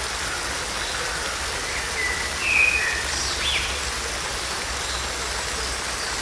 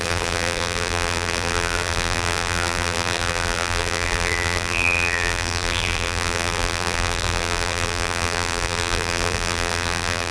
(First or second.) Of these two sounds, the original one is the first